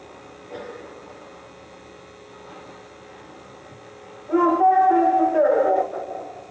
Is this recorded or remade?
recorded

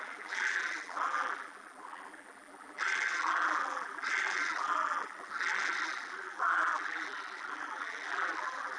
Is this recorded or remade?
remade